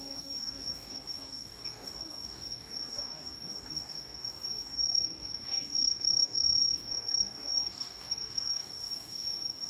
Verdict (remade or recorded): remade